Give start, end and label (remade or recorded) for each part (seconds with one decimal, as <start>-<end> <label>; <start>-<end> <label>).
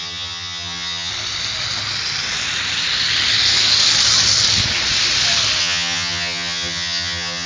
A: 0.0-1.1 remade; 1.1-5.6 recorded; 5.6-7.5 remade